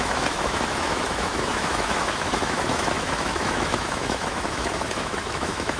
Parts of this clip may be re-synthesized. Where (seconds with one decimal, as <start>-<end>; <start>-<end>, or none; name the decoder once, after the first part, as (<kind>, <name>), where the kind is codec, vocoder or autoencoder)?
0.0-5.8 (autoencoder, DAC-VAE)